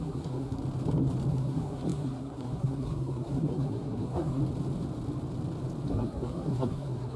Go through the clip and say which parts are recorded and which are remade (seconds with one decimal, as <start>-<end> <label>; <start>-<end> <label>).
0.0-0.6 remade; 0.6-1.3 recorded; 1.3-4.4 remade; 4.4-5.9 recorded; 5.9-7.2 remade